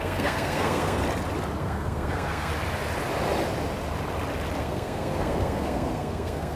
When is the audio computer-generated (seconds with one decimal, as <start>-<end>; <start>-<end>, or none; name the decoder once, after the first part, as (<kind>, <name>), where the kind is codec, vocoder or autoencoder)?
0.0-1.0 (codec, SNAC); 1.6-2.5; 4.6-6.6